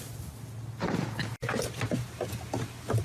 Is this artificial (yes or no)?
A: no